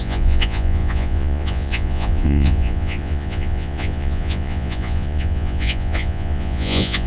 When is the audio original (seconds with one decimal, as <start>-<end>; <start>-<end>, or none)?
none